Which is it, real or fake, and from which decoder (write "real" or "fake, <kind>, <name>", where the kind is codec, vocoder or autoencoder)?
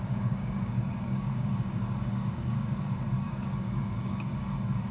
fake, codec, DAC